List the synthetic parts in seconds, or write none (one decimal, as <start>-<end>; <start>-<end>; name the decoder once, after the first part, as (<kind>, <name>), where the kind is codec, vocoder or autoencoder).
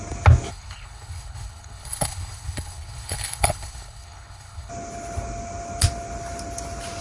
0.5-4.7 (codec, HILCodec)